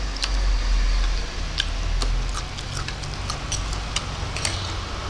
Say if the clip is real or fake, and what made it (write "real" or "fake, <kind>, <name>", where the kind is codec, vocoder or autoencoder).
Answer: real